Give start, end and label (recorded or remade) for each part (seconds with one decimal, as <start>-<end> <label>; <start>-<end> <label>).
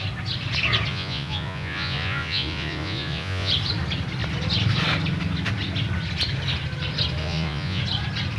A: 0.0-0.9 recorded; 0.9-3.5 remade; 3.5-7.2 recorded; 7.2-7.8 remade; 7.8-8.4 recorded